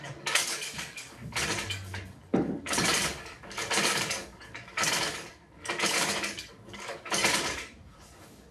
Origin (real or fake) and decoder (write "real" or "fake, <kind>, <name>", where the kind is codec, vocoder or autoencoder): fake, codec, DAC